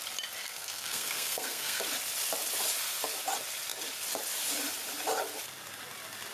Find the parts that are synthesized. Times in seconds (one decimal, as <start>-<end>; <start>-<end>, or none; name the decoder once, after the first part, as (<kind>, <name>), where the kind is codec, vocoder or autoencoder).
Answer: 0.4-1.8 (codec, SNAC)